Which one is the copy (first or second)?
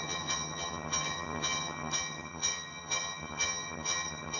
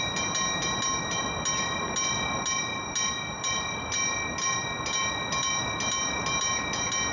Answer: first